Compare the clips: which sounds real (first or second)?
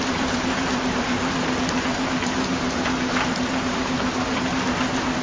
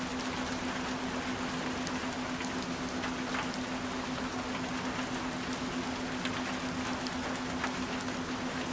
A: second